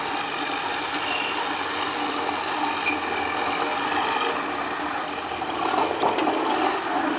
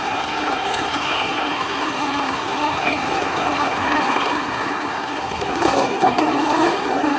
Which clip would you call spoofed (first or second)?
second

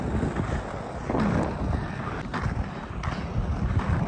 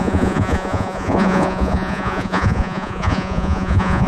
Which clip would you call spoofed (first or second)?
second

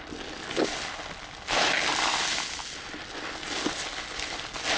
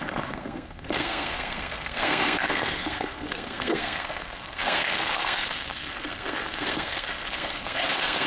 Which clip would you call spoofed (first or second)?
second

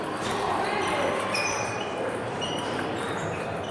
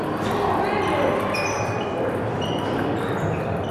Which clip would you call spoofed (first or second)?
first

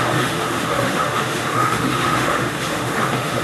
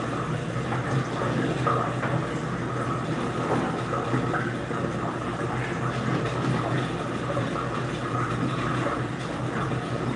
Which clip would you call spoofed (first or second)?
first